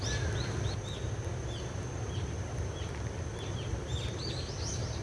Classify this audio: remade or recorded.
recorded